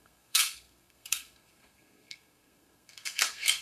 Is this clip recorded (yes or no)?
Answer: no